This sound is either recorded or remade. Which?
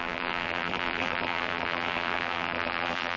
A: remade